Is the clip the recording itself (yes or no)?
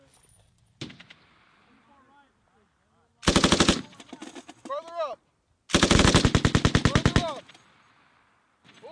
yes